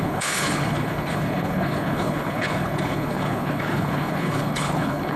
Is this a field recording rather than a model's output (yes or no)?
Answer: no